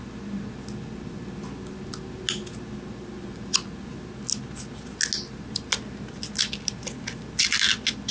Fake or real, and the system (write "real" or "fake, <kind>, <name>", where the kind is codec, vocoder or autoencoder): real